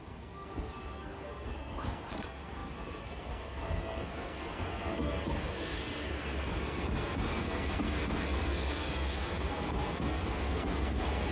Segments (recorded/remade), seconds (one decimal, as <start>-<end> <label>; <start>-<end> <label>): 0.0-11.3 remade